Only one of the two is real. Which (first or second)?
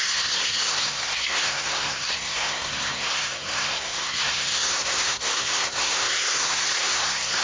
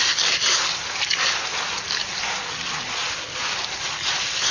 second